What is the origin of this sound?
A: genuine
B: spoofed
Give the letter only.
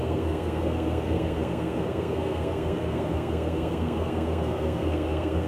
B